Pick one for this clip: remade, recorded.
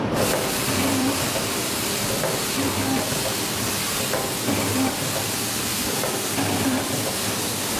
remade